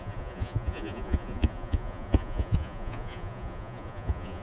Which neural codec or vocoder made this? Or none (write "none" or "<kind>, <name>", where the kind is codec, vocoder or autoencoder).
vocoder, Vocos